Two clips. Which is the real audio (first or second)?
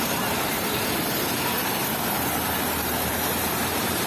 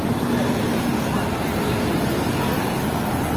second